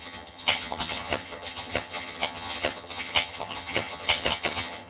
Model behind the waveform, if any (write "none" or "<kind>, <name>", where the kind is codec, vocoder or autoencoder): vocoder, HiFi-GAN